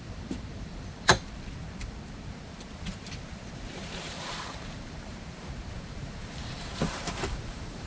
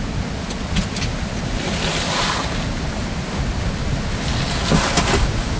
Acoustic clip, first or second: second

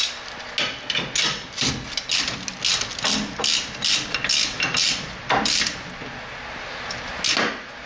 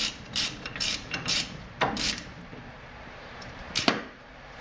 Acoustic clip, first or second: first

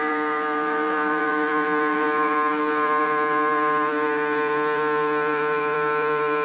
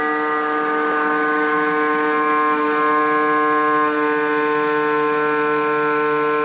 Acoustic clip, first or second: second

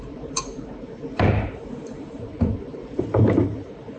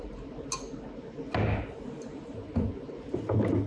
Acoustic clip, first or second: second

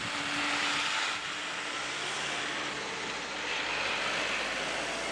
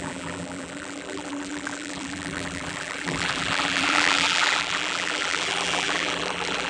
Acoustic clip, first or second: first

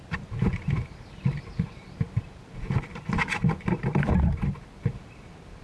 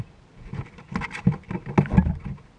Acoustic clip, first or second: second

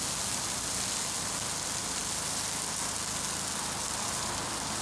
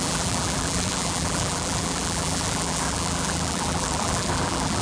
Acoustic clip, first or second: first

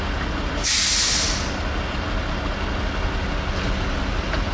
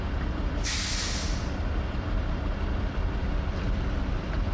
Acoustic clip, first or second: first